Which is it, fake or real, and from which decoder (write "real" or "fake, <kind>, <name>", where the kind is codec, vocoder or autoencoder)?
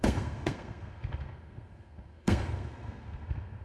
fake, codec, SNAC